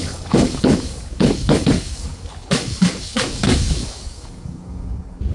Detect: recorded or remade remade